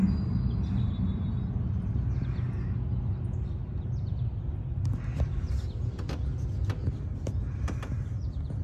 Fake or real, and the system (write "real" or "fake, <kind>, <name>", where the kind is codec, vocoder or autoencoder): real